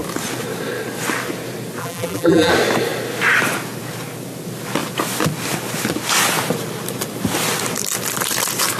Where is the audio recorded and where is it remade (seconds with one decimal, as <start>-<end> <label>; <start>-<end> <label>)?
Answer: 0.0-1.8 recorded; 1.8-2.5 remade; 2.5-8.8 recorded